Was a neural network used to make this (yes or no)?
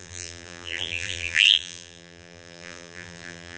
yes